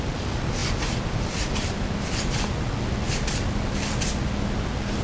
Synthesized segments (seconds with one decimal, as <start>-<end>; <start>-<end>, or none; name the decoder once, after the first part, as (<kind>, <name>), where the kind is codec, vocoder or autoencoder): none